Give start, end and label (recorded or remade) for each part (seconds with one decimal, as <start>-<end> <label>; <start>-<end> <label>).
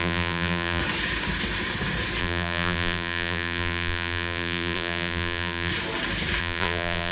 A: 0.0-0.8 remade; 0.8-2.2 recorded; 2.2-5.7 remade; 5.7-6.4 recorded; 6.4-7.1 remade